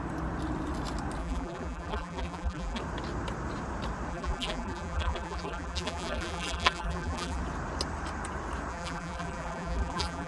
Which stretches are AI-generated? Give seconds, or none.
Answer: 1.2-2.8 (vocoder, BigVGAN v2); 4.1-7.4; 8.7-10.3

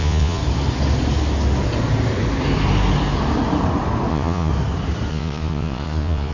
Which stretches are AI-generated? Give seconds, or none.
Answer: 0.0-0.4 (vocoder, Vocos); 4.1-4.5; 5.1-6.3

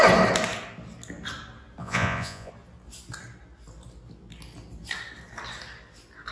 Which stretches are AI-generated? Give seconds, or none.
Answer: 1.8-2.5 (vocoder, Vocos)

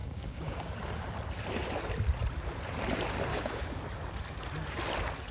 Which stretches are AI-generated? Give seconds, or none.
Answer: 0.0-0.7 (codec, DAC); 3.3-3.8